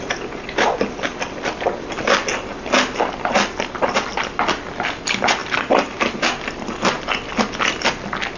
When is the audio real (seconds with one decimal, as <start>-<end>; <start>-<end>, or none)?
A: 0.0-8.4